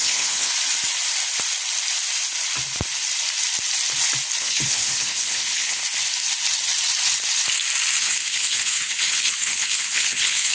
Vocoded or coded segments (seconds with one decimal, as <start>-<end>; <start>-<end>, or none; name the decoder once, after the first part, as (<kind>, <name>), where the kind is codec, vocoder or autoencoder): 0.0-0.5 (codec, HILCodec); 4.4-5.8; 8.0-10.5